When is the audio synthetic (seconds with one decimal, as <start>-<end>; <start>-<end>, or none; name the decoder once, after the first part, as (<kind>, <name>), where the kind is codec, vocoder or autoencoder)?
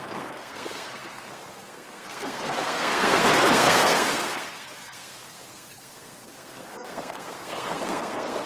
0.0-8.5 (codec, SNAC)